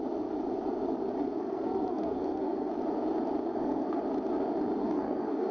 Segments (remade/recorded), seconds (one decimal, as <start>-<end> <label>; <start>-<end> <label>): 0.0-1.2 recorded; 1.2-2.7 remade; 2.7-3.5 recorded; 3.5-4.0 remade; 4.0-4.8 recorded; 4.8-5.5 remade